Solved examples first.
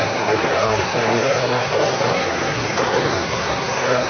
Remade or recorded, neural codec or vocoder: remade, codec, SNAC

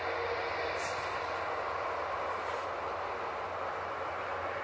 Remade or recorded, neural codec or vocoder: recorded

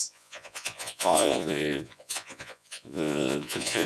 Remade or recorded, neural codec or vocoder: remade, vocoder, Vocos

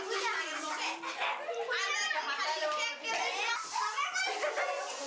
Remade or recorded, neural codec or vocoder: recorded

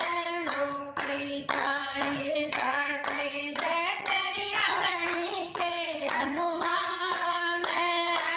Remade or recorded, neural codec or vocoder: remade, vocoder, HiFi-GAN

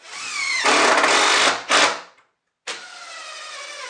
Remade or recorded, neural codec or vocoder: recorded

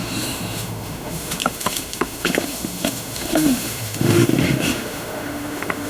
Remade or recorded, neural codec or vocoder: remade, autoencoder, DAC-VAE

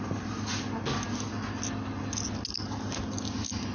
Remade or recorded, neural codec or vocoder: recorded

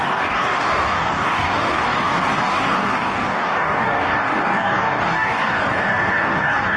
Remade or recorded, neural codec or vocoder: remade, codec, DAC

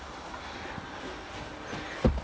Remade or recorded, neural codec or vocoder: recorded